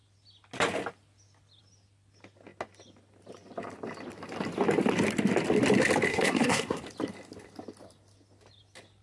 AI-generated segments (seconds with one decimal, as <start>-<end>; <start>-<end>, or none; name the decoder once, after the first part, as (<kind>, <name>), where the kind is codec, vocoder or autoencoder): 6.1-6.8 (codec, SNAC)